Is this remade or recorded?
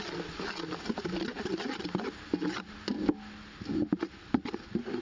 recorded